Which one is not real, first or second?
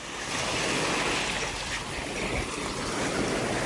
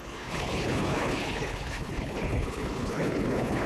second